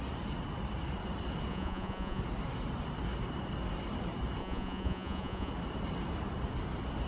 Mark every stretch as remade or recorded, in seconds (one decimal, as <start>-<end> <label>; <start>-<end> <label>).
0.0-1.5 recorded; 1.5-2.2 remade; 2.2-4.4 recorded; 4.4-5.5 remade; 5.5-7.1 recorded